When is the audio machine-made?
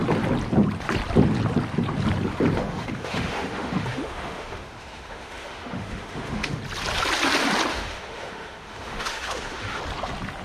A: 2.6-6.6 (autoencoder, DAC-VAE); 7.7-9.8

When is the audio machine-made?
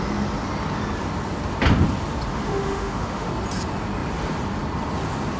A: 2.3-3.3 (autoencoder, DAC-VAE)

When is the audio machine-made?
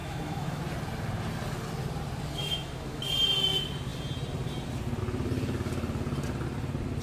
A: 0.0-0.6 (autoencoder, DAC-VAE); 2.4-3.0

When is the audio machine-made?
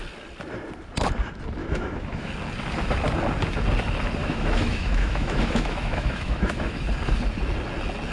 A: 1.6-2.3 (autoencoder, DAC-VAE); 4.2-6.9